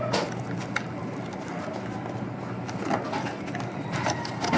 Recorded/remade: recorded